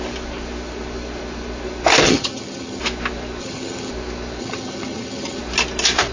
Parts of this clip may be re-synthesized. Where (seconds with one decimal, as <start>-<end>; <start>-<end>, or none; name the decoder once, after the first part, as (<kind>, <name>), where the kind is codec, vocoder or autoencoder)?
2.0-2.8 (vocoder, HiFi-GAN); 3.4-3.9; 4.4-5.4